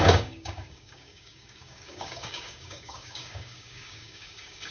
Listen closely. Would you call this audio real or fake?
fake